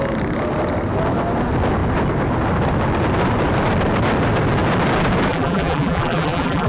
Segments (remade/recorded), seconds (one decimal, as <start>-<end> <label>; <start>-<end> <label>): 0.0-5.3 recorded; 5.3-6.7 remade